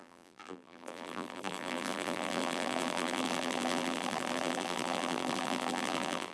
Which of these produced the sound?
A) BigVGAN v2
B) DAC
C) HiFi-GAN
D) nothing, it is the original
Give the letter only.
A